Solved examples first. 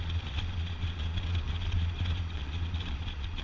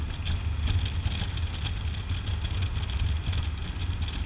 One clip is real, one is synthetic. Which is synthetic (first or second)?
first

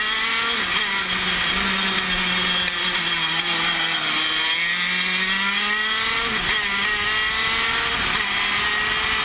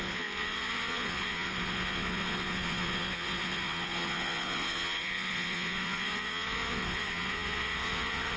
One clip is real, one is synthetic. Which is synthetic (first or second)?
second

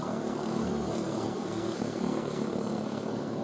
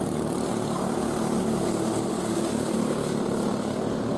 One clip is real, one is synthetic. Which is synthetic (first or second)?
first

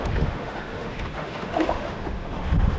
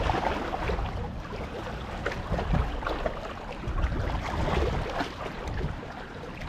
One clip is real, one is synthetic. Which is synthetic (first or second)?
first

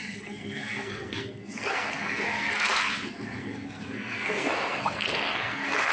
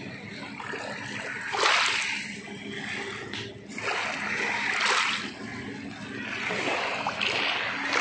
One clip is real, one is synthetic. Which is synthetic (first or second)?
first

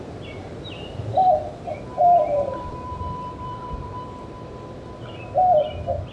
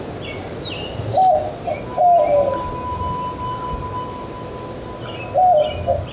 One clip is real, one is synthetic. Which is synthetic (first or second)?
first